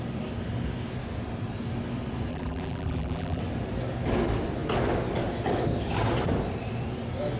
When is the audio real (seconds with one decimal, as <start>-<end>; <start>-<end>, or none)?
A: 0.0-2.3; 3.4-7.4